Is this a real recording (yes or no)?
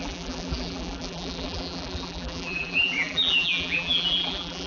no